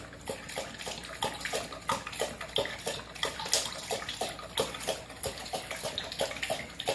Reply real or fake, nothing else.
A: real